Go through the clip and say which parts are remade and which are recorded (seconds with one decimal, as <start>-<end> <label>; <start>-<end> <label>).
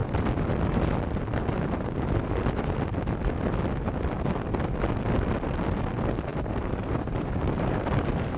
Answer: 0.0-6.3 recorded; 6.3-8.4 remade